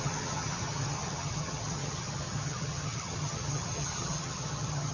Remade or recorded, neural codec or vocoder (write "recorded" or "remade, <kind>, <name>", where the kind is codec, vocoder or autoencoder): remade, vocoder, HiFi-GAN